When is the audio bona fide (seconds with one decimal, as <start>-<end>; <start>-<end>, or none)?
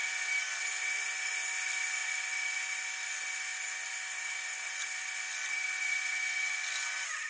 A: 0.0-7.3